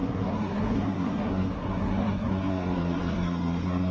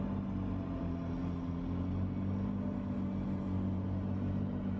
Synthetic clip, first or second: first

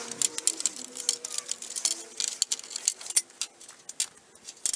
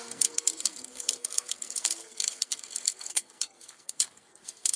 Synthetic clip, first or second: second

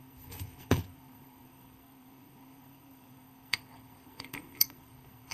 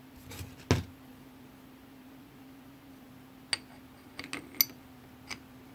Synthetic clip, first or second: first